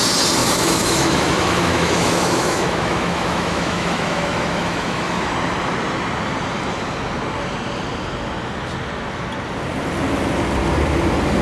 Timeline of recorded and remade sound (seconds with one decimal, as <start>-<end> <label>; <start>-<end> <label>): 0.0-0.4 recorded; 0.4-5.3 remade; 5.3-11.4 recorded